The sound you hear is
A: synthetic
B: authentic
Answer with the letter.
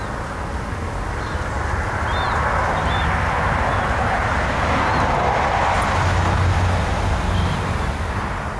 B